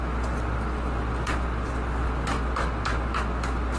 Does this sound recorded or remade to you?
recorded